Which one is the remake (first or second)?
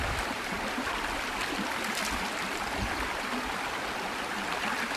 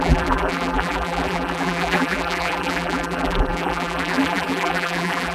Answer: second